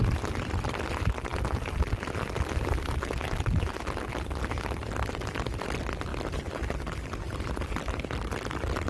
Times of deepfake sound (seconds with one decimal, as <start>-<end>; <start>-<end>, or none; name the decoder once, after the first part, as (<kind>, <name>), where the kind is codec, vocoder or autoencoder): none